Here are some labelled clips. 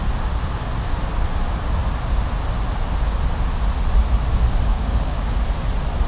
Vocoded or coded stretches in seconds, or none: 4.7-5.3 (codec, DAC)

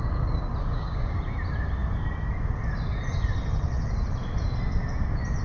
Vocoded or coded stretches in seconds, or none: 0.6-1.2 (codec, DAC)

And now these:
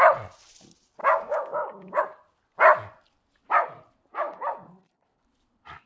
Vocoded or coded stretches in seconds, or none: 1.0-2.0 (codec, DAC)

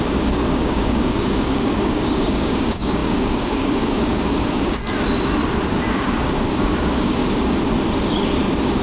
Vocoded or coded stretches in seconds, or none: 0.0-4.8 (codec, DAC); 5.9-7.2

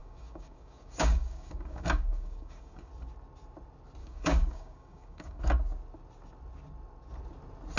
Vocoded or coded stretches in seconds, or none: 0.0-2.9 (codec, DAC); 4.0-5.4

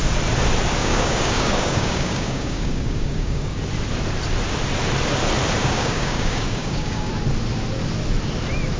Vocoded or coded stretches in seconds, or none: 0.8-3.6 (codec, DAC); 5.6-7.1

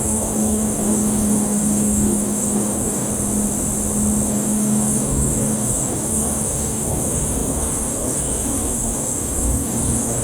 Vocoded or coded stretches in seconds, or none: 0.0-3.1 (codec, DAC); 4.3-10.2